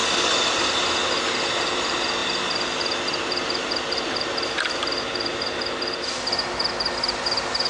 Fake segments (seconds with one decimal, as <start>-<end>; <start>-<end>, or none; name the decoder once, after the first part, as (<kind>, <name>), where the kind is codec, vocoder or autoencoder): none